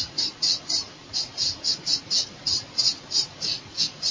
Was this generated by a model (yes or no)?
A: yes